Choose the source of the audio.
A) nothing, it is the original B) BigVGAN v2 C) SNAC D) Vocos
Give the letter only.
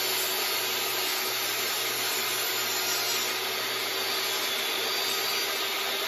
A